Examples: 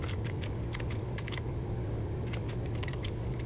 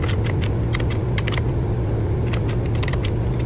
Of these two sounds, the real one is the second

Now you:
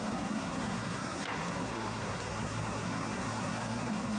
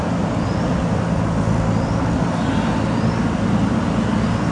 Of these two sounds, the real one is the second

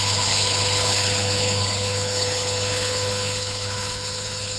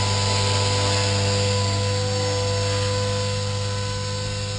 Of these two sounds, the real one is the second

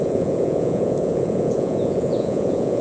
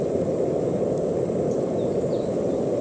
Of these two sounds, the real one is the second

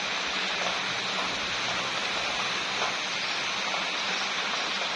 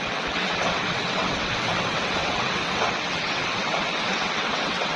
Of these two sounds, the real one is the first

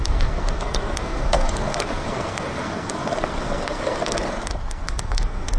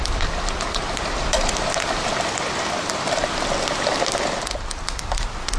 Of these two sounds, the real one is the second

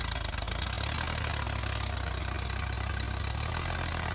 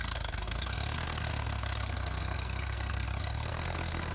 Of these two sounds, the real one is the first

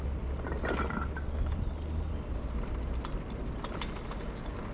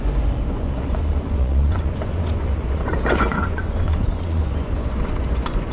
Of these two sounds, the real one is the first